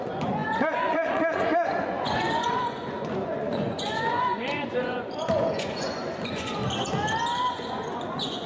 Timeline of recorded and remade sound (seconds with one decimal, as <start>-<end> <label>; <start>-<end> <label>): 0.0-6.6 remade; 6.6-7.5 recorded; 7.5-8.5 remade